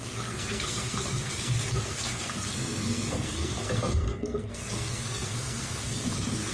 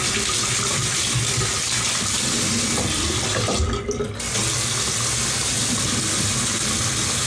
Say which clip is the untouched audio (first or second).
second